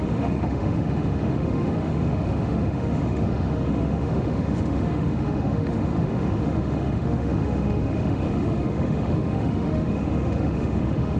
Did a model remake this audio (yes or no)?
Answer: yes